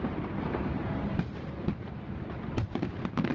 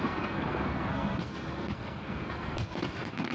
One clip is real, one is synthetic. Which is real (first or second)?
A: first